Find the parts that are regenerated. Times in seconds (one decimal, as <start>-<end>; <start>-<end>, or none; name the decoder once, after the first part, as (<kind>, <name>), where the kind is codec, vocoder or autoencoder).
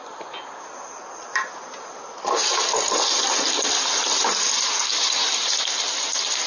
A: none